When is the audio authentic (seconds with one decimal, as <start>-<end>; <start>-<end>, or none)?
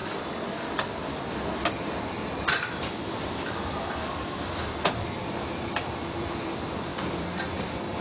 0.0-1.6